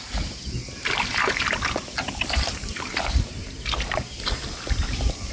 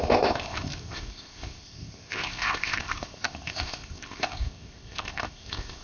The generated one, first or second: second